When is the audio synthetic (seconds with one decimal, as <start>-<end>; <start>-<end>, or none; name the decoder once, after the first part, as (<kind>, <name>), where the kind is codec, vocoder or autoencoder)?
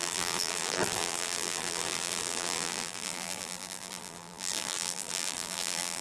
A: 0.0-6.0 (vocoder, BigVGAN v2)